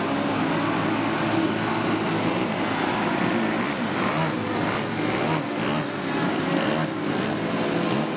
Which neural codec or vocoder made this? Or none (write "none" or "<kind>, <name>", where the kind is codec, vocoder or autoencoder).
none